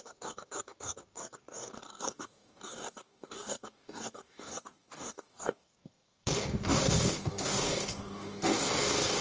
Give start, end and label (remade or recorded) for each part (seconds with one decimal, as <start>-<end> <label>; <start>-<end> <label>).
0.0-9.2 remade